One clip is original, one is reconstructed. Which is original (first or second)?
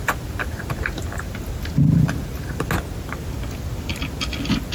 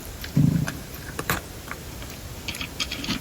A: first